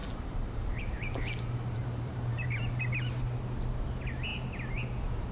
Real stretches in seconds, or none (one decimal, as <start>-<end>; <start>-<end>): 3.2-5.3